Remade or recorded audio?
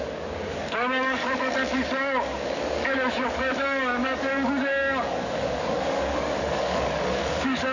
remade